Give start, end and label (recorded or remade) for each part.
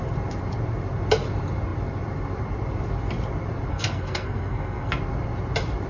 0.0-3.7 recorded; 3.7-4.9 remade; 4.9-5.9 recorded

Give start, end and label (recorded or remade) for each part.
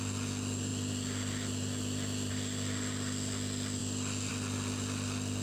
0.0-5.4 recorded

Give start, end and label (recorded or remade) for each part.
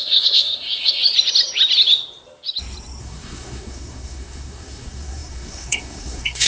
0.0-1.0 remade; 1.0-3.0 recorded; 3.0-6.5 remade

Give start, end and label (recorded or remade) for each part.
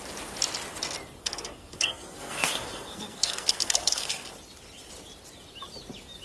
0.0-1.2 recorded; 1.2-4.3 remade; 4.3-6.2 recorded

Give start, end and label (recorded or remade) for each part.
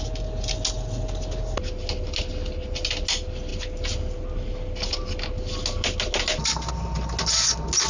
0.0-7.9 recorded